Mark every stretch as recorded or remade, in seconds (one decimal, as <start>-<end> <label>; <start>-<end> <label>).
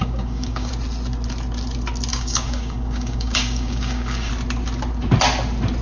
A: 0.0-0.7 remade; 0.7-2.1 recorded; 2.1-4.3 remade; 4.3-5.8 recorded